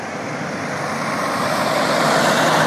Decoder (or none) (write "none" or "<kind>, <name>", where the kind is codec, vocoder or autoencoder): vocoder, BigVGAN v2